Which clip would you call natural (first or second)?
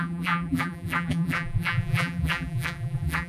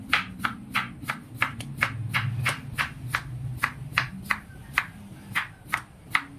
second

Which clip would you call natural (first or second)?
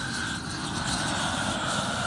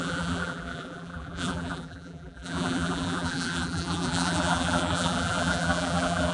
first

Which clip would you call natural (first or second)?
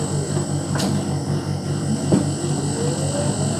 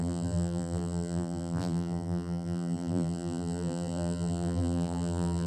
first